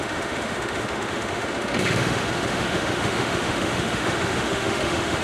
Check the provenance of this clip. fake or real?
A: fake